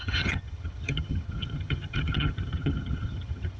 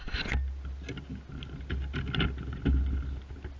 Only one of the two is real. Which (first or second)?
second